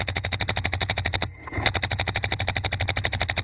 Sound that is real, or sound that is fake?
fake